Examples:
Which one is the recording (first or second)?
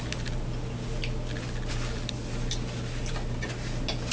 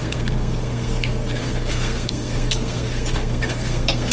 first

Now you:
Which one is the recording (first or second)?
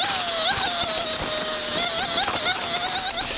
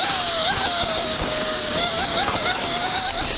first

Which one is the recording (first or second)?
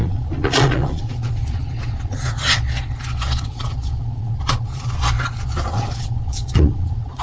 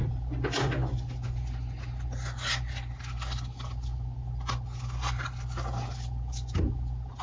second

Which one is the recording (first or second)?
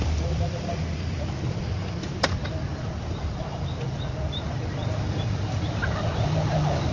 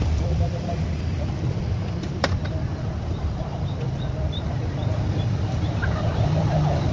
first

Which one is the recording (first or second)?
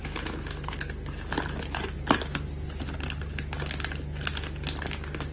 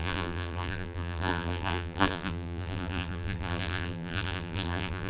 first